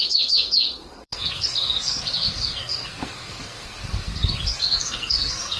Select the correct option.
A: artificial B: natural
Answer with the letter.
A